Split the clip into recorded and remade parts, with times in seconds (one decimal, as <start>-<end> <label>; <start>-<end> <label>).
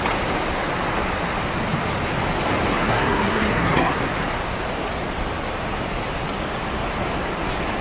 0.0-2.7 recorded; 2.7-4.0 remade; 4.0-7.8 recorded